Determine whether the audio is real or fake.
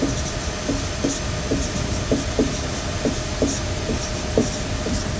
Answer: real